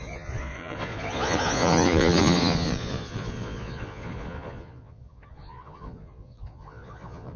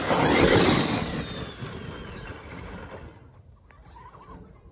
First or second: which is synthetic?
first